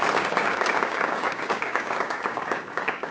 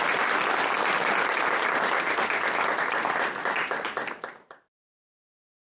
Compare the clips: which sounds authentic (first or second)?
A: second